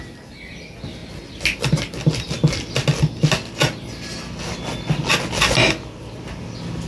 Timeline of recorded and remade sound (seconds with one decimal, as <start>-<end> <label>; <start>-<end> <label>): 0.0-6.9 recorded